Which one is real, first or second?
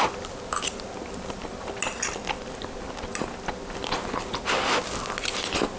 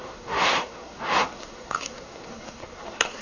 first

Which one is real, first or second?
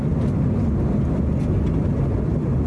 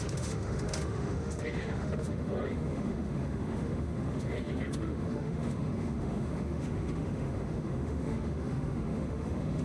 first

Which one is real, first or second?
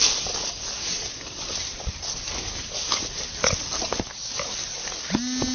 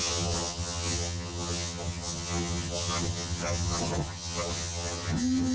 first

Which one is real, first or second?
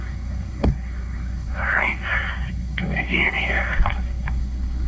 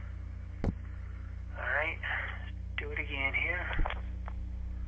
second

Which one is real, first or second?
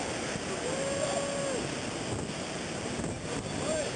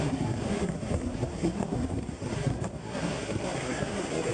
first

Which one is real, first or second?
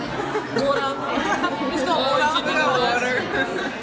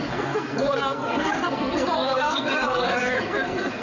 first